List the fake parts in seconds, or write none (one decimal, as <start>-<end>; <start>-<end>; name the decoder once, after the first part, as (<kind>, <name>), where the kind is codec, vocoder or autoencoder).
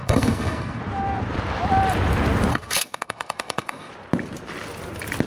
0.0-0.8 (codec, SNAC); 2.5-3.9